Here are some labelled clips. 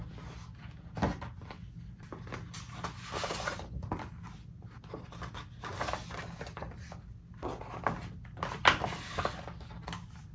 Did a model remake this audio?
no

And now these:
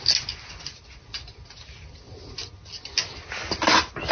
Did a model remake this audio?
no